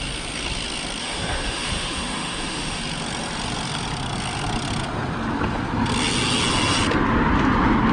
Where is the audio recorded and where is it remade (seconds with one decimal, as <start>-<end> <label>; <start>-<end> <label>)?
0.0-1.0 recorded; 1.0-2.8 remade; 2.8-7.9 recorded